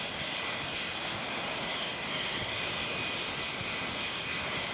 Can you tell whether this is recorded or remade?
recorded